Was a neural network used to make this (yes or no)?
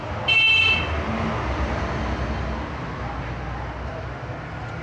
no